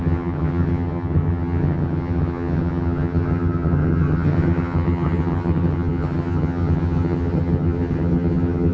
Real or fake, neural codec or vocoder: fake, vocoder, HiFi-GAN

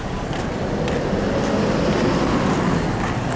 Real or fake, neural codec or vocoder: real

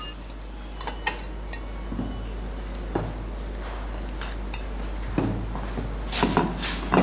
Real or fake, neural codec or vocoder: real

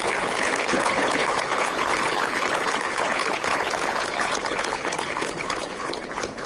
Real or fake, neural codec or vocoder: fake, codec, HILCodec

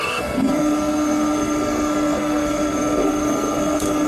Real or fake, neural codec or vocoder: fake, codec, SNAC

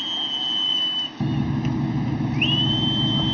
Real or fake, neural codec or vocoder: real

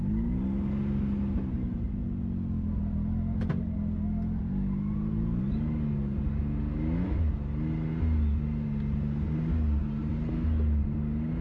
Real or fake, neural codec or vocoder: real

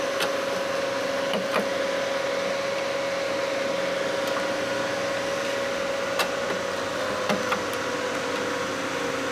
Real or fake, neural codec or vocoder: real